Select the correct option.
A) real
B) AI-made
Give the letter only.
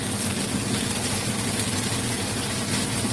A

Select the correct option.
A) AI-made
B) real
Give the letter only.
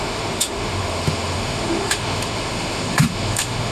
A